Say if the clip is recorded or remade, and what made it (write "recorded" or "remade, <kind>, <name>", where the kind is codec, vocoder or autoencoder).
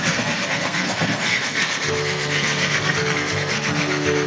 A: remade, codec, SNAC